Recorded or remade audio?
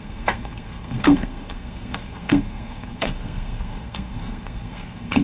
remade